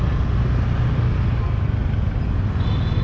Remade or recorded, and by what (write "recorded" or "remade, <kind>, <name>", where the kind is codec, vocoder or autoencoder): recorded